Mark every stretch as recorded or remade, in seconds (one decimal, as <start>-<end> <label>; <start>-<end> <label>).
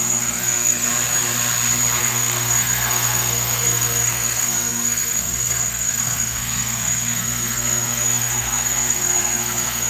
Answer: 0.0-0.9 remade; 0.9-2.0 recorded; 2.0-9.9 remade